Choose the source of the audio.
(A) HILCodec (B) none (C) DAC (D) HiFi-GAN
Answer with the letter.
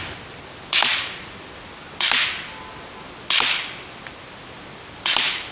B